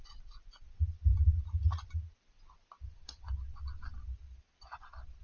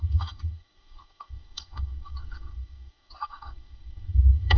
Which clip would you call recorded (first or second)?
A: first